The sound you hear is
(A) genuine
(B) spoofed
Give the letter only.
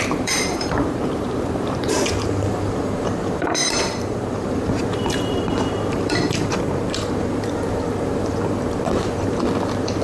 B